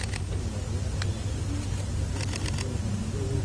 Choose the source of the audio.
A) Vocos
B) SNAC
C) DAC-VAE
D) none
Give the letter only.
D